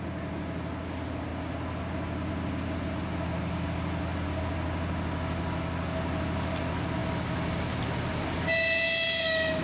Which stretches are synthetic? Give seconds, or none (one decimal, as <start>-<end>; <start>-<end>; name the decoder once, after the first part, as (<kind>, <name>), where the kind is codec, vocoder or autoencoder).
none

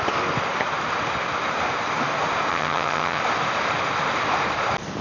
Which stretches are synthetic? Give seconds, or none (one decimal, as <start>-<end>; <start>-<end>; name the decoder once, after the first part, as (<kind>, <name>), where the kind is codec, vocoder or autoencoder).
2.5-3.2 (vocoder, HiFi-GAN)

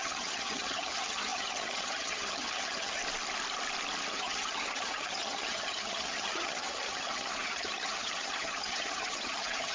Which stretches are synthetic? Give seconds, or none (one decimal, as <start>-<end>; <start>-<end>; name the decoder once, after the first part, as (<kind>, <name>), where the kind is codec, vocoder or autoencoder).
0.0-3.0 (vocoder, HiFi-GAN); 4.1-9.7

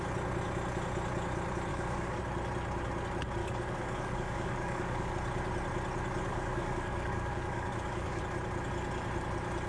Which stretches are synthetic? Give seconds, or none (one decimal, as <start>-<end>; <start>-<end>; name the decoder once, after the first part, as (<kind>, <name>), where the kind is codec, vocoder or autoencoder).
1.7-2.2 (codec, DAC); 3.4-5.1; 6.3-8.2

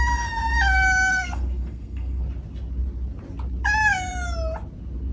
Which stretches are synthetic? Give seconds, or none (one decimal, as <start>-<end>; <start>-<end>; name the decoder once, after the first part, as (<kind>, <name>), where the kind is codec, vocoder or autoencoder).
1.1-2.2 (codec, SNAC)

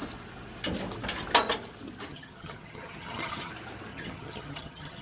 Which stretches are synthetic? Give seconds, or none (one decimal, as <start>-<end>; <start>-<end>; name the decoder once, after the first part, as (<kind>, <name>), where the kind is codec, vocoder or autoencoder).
2.1-3.5 (vocoder, HiFi-GAN); 3.9-5.0

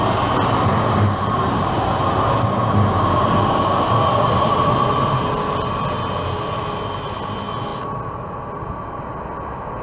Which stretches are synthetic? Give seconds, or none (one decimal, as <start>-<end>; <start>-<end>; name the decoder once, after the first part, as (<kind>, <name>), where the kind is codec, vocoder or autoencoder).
none

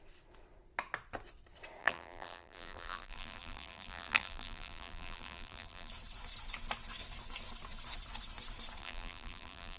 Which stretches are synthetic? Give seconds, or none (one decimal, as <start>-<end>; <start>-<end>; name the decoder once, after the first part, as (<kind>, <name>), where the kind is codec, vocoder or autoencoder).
1.8-5.9 (vocoder, BigVGAN v2); 8.8-9.8